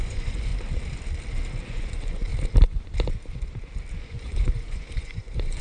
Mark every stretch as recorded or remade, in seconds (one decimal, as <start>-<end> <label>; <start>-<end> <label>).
0.0-0.5 remade; 0.5-1.6 recorded; 1.6-2.3 remade; 2.3-3.9 recorded; 3.9-5.6 remade